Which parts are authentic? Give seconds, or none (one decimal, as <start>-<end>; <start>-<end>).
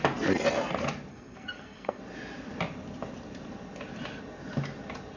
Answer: 0.0-1.1; 2.0-5.2